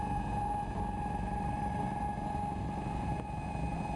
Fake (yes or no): no